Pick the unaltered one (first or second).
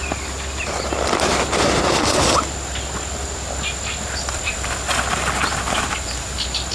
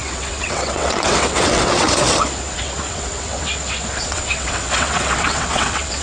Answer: first